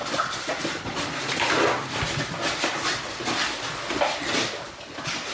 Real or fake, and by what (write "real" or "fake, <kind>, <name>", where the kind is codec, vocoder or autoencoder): real